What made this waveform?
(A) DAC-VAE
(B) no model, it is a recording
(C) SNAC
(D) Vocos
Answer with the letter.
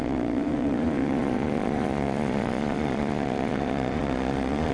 D